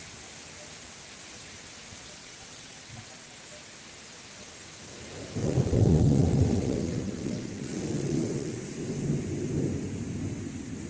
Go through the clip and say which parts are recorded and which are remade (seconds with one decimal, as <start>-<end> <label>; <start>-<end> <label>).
0.0-2.2 recorded; 2.2-3.4 remade; 3.4-5.4 recorded; 5.4-8.6 remade; 8.6-10.9 recorded